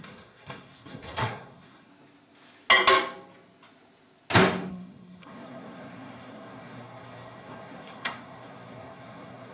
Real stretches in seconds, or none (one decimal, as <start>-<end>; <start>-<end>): 1.9-4.7